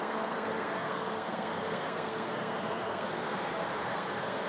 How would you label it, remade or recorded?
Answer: remade